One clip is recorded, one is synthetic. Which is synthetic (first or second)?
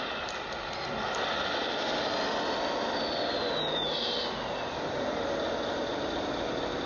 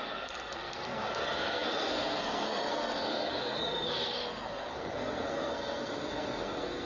second